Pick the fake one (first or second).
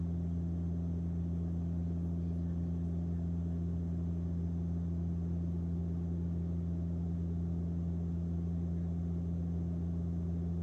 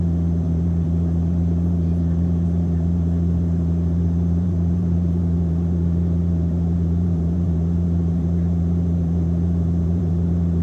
second